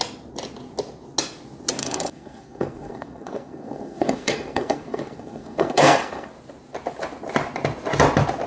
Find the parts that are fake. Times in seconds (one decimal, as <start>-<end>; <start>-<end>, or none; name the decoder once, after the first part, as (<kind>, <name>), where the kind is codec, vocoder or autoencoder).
1.8-6.3 (codec, SNAC)